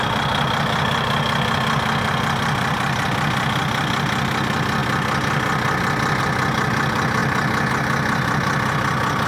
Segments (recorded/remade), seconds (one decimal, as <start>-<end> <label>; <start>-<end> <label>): 0.0-9.3 recorded